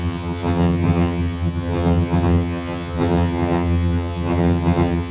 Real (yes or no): no